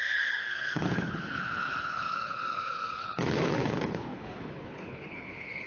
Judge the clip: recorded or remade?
remade